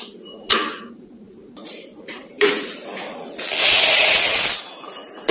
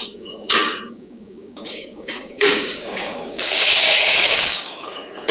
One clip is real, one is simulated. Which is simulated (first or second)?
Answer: second